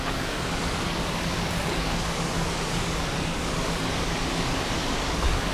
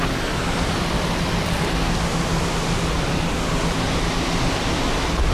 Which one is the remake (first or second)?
first